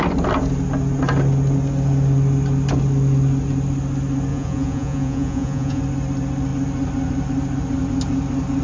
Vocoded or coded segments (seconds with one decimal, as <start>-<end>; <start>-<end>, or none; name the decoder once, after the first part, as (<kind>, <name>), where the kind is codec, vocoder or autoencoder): 4.3-5.8 (vocoder, Vocos)